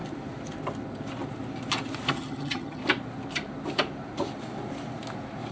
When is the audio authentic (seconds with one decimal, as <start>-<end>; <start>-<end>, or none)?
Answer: 0.0-2.1; 2.8-5.5